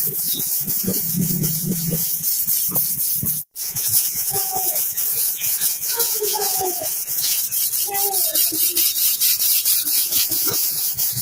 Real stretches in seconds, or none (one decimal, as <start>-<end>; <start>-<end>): 2.2-3.3; 7.4-9.9